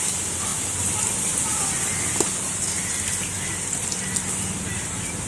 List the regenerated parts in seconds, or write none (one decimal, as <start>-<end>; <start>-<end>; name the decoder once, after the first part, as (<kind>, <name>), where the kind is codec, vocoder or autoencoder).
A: none